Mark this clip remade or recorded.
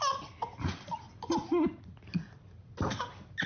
recorded